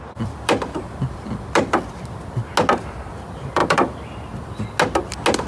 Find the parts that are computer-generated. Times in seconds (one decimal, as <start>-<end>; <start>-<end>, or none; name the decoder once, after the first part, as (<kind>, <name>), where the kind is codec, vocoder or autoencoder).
0.0-2.5 (vocoder, BigVGAN v2); 3.1-3.6